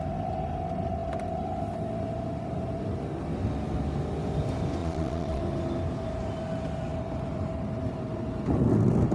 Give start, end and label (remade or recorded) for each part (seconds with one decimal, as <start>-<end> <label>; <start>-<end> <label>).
0.0-4.8 recorded; 4.8-5.4 remade; 5.4-9.1 recorded